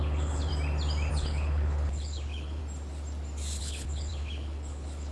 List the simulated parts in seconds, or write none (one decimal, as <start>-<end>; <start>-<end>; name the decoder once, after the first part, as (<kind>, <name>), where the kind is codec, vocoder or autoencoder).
0.0-0.5 (codec, HILCodec); 1.1-2.6; 3.6-5.1